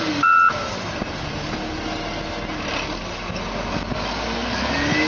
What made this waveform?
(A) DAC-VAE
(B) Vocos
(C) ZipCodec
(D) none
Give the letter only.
D